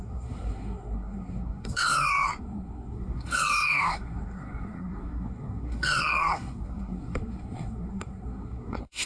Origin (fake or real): fake